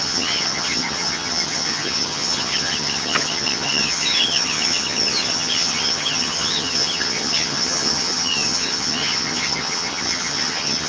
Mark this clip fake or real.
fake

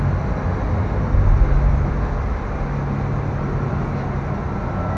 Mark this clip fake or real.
real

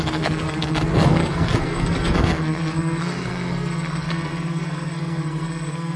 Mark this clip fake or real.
fake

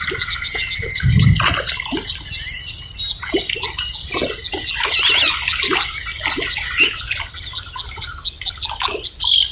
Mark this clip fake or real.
real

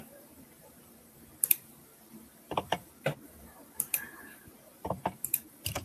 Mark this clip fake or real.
fake